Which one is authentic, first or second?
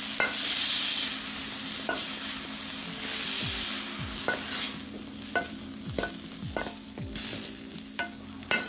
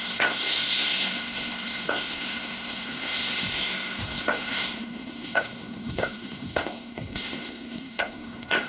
first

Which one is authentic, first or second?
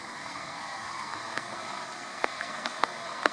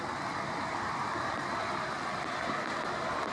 second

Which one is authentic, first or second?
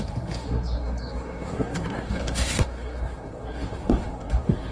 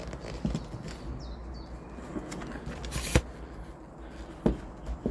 second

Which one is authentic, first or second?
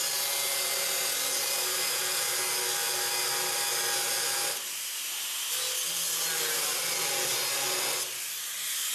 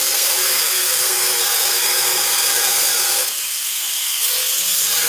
first